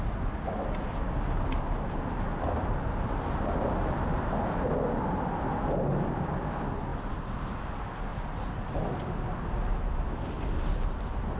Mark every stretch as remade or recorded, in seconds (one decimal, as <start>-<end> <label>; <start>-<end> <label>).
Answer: 0.0-11.4 recorded